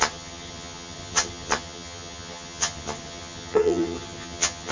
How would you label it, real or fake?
fake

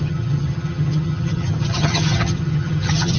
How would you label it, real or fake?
fake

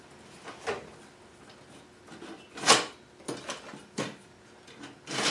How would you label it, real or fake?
real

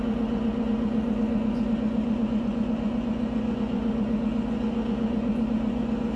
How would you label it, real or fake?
fake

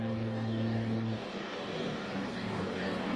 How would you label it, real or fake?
fake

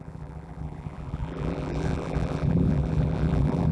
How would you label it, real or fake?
fake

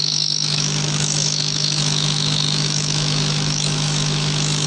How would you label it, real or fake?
fake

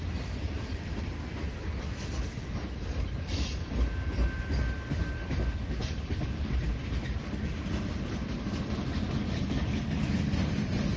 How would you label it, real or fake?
real